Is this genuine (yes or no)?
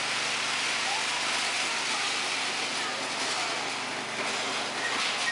yes